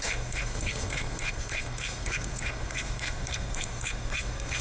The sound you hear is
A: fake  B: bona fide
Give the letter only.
A